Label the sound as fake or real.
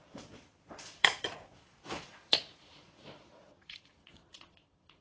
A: fake